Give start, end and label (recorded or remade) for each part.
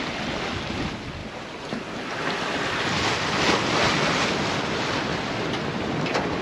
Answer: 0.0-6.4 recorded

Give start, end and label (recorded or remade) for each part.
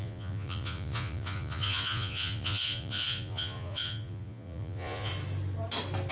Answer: 0.0-5.1 remade; 5.1-6.1 recorded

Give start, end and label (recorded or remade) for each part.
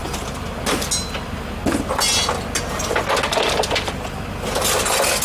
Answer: 0.0-5.2 recorded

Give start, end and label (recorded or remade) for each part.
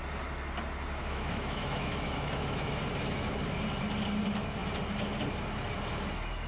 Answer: 0.0-1.0 recorded; 1.0-2.8 remade; 2.8-6.5 recorded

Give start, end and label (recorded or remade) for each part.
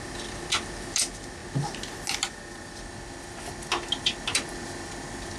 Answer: 0.0-5.4 recorded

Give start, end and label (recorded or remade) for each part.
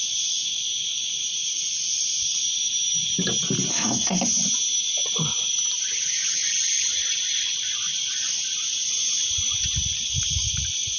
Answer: 0.0-3.7 recorded; 3.7-4.2 remade; 4.2-11.0 recorded